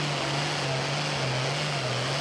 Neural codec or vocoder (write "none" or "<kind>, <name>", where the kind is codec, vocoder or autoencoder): none